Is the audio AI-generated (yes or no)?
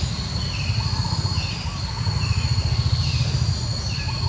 no